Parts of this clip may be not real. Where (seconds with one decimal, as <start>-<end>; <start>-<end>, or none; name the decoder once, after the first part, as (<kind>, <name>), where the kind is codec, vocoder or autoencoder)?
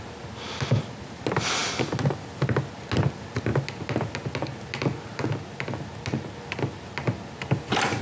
none